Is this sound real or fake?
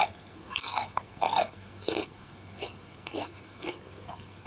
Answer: fake